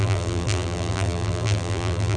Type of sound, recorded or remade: remade